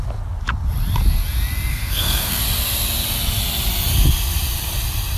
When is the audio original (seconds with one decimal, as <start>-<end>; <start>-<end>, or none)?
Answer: 0.0-1.7; 2.4-5.2